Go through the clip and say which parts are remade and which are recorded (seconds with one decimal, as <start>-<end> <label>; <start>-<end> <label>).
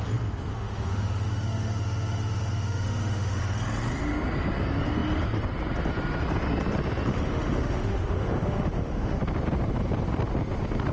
0.0-0.5 recorded; 0.5-3.4 remade; 3.4-7.1 recorded; 7.1-9.2 remade; 9.2-10.9 recorded